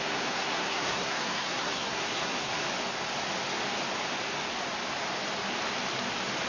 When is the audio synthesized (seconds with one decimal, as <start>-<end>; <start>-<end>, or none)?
0.0-2.6